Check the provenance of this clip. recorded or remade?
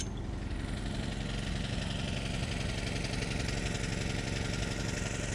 recorded